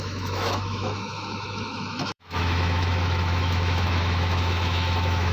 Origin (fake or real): fake